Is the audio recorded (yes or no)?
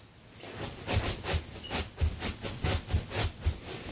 yes